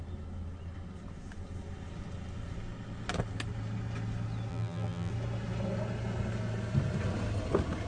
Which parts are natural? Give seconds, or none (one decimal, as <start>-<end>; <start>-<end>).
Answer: 0.0-4.5; 5.1-7.9